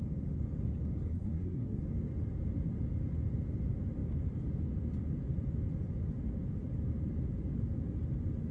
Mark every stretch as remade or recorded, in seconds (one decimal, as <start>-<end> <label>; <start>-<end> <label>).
0.0-1.1 recorded; 1.1-1.8 remade; 1.8-8.5 recorded